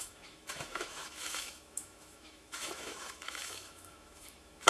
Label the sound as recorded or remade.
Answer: remade